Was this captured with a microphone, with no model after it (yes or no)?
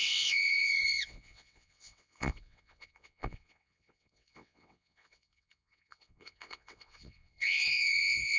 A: no